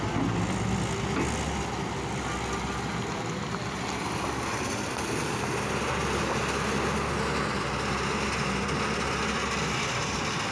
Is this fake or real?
real